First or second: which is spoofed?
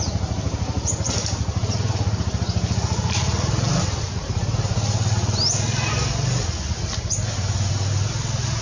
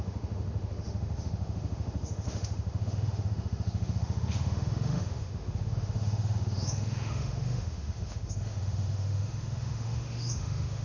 second